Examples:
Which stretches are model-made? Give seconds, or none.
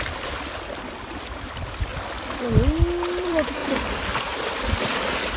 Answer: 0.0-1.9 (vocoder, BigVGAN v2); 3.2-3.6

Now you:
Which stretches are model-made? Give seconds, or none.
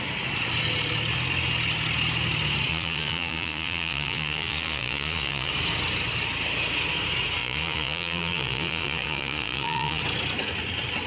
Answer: 2.7-5.5 (vocoder, Vocos); 7.4-10.0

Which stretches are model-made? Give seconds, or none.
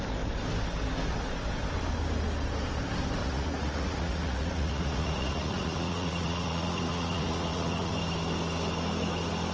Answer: 3.2-7.9 (vocoder, Vocos)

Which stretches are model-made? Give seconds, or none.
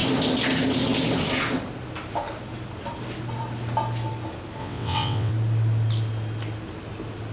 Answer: 4.6-5.3 (vocoder, WaveNeXt)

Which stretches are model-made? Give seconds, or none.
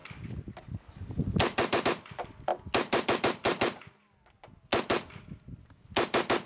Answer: none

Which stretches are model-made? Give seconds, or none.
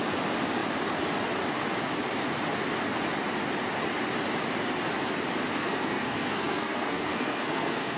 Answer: 5.6-8.0 (codec, SNAC)